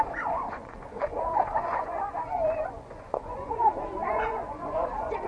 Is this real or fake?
fake